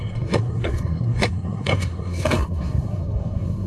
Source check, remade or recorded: remade